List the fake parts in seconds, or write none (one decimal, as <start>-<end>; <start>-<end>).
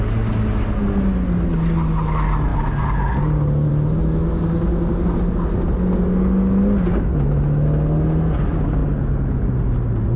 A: none